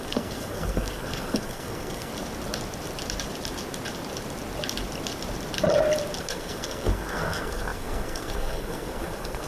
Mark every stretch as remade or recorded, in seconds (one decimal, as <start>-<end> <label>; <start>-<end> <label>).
0.0-2.1 remade; 2.1-6.2 recorded; 6.2-9.5 remade